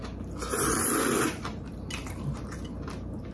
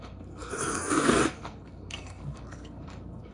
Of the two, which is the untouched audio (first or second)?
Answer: first